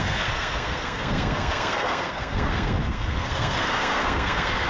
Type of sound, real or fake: fake